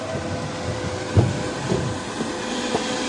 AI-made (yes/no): no